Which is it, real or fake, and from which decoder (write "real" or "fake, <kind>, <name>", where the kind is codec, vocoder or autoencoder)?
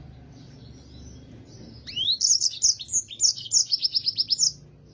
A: real